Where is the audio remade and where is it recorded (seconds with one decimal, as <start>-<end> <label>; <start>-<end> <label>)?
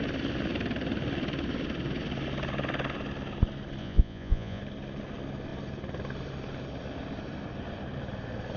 0.0-3.8 recorded; 3.8-4.6 remade; 4.6-8.6 recorded